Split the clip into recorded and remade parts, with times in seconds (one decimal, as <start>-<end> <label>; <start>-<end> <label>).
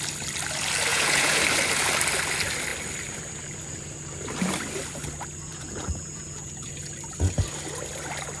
0.0-0.9 recorded; 0.9-1.4 remade; 1.4-5.5 recorded; 5.5-6.8 remade; 6.8-8.4 recorded